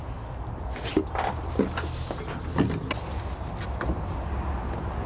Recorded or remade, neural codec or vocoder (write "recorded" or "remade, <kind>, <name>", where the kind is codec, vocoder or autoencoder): recorded